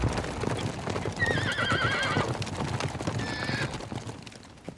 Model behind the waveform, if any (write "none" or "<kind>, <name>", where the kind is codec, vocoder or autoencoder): none